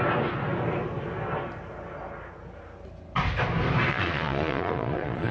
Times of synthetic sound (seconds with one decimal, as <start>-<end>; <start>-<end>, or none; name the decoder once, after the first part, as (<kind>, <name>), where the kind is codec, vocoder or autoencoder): 3.9-5.3 (vocoder, Vocos)